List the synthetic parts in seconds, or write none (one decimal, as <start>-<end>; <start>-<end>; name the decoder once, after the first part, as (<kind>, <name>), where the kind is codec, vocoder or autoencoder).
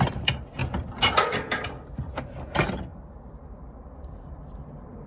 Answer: 0.6-2.1 (vocoder, BigVGAN v2); 2.9-5.1